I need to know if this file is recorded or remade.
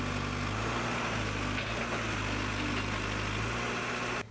recorded